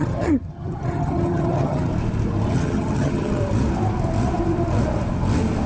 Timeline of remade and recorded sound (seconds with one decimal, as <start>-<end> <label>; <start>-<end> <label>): 0.0-1.9 remade; 1.9-2.5 recorded; 2.5-3.4 remade; 3.4-5.7 recorded